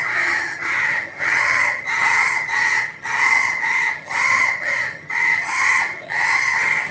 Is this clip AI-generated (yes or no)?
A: yes